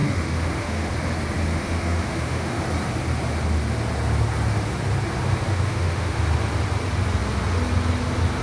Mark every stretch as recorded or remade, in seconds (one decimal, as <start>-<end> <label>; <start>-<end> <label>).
0.0-0.9 remade; 0.9-1.5 recorded; 1.5-2.6 remade; 2.6-5.5 recorded; 5.5-6.2 remade; 6.2-8.4 recorded